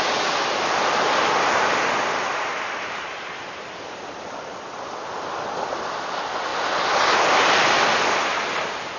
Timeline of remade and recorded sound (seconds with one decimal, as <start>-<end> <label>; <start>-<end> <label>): 0.0-9.0 recorded